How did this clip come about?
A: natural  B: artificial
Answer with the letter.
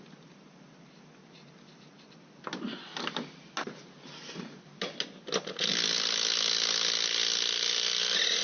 A